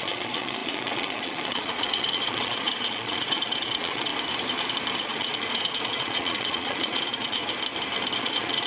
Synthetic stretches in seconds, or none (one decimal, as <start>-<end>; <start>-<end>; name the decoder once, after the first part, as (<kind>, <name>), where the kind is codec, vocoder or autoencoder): 0.0-4.1 (vocoder, Vocos); 5.0-7.4; 8.2-8.7